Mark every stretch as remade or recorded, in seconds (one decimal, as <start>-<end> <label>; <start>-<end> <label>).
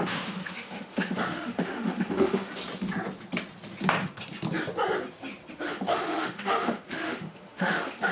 0.0-2.6 remade; 2.6-5.5 recorded; 5.5-8.1 remade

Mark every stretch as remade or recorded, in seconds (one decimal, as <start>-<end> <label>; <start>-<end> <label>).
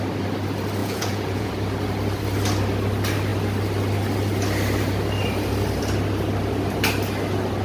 0.0-0.8 recorded; 0.8-1.5 remade; 1.5-7.6 recorded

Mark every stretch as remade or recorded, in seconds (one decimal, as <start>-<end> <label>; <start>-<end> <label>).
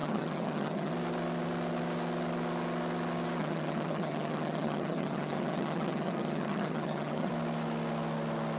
0.0-0.9 remade; 0.9-3.4 recorded; 3.4-7.3 remade; 7.3-8.6 recorded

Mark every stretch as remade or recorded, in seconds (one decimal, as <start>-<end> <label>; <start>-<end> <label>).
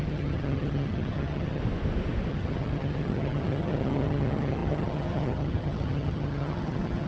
0.0-1.6 remade; 1.6-2.3 recorded; 2.3-7.1 remade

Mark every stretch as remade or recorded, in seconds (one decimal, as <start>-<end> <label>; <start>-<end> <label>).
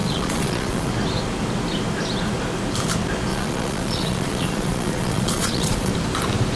0.0-0.9 remade; 0.9-3.3 recorded; 3.3-5.9 remade; 5.9-6.6 recorded